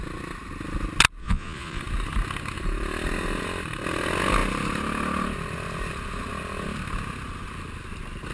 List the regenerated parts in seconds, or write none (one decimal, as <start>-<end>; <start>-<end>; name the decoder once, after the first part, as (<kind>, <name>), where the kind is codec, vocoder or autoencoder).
1.2-1.8 (vocoder, Vocos)

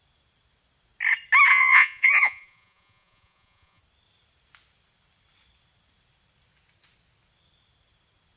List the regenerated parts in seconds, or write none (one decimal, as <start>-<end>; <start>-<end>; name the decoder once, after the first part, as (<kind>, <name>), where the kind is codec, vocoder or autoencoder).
1.5-3.8 (vocoder, Vocos)

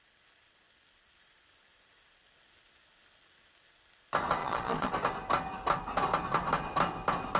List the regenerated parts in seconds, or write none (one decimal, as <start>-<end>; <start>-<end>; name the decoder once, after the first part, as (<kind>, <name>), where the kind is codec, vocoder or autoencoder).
4.4-4.9 (vocoder, Vocos)

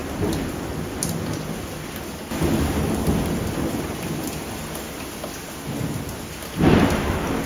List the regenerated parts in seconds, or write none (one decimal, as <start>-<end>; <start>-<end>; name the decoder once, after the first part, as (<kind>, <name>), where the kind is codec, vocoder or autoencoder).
none

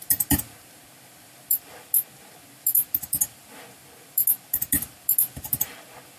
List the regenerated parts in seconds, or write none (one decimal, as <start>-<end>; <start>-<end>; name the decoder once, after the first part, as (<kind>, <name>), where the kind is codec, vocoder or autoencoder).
none

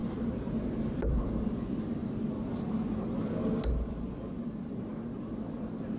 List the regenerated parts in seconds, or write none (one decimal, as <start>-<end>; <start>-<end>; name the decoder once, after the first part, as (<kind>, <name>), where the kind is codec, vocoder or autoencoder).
none

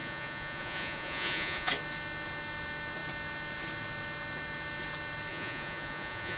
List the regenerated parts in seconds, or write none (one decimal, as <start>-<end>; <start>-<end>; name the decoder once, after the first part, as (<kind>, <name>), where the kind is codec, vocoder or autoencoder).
0.0-1.7 (vocoder, Vocos); 5.3-6.4

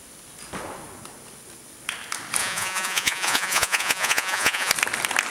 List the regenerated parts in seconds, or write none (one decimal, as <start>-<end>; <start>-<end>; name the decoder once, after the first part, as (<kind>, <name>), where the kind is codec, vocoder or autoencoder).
2.4-4.7 (vocoder, Vocos)